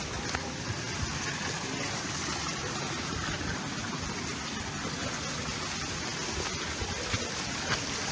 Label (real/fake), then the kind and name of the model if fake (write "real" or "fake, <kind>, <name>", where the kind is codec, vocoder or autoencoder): real